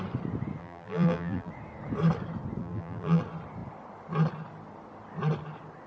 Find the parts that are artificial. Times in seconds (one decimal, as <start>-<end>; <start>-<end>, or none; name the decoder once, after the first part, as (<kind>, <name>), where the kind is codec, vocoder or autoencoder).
0.6-1.5 (vocoder, BigVGAN v2); 2.6-3.2